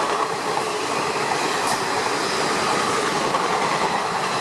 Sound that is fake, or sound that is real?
fake